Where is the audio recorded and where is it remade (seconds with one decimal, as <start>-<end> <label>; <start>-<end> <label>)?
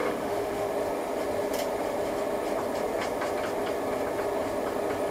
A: 0.0-0.7 remade; 0.7-5.1 recorded